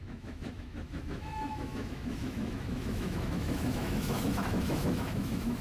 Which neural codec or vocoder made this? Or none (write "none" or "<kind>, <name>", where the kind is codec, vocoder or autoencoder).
autoencoder, DAC-VAE